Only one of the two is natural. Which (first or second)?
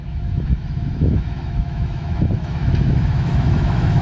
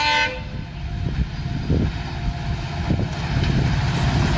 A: second